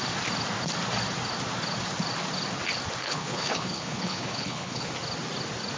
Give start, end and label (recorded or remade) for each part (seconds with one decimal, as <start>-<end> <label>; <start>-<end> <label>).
0.0-3.0 recorded; 3.0-4.9 remade; 4.9-5.8 recorded